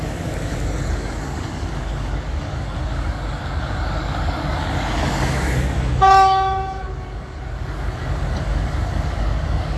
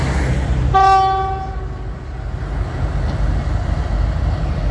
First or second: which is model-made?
first